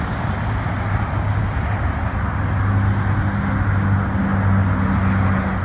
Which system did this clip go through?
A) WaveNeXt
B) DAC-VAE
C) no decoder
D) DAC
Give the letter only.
C